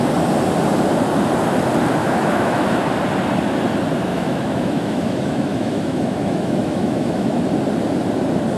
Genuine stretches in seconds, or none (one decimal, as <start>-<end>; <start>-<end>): 0.0-2.0; 2.8-4.1; 7.4-8.6